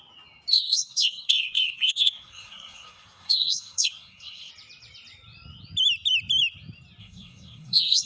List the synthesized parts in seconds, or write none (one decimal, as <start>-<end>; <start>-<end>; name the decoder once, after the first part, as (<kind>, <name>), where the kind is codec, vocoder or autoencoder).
0.5-4.5 (codec, SNAC); 7.0-8.1